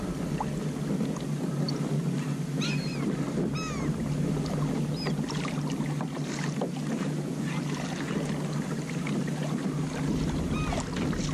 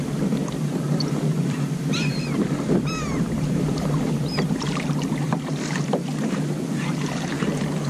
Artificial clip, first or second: second